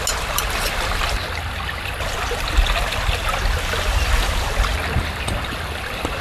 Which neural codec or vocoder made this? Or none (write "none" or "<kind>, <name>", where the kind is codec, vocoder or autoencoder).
none